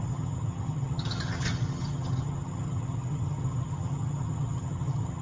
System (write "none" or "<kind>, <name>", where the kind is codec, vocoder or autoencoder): vocoder, HiFi-GAN